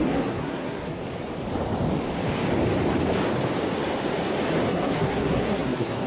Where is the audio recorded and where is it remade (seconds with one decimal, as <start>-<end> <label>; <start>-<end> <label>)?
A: 0.0-1.0 remade; 1.0-4.7 recorded; 4.7-6.1 remade